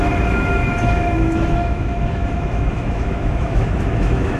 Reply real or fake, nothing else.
fake